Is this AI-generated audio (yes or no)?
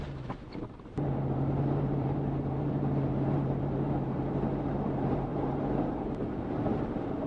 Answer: yes